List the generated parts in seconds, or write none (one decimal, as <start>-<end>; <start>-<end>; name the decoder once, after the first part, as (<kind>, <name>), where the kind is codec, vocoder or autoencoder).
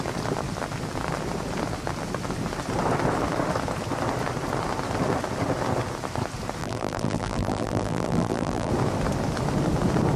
6.6-8.7 (vocoder, BigVGAN v2)